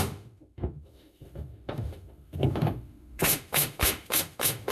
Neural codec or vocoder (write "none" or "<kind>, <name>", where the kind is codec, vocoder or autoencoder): autoencoder, DAC-VAE